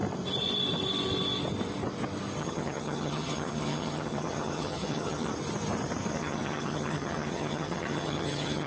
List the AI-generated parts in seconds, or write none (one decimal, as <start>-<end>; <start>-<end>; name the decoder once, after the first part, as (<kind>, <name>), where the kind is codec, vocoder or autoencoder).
2.4-5.3 (vocoder, HiFi-GAN); 6.1-8.7

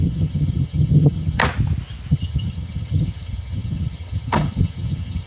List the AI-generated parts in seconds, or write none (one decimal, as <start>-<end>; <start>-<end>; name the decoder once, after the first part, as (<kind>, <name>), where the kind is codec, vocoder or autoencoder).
0.0-1.4 (vocoder, HiFi-GAN); 2.1-5.3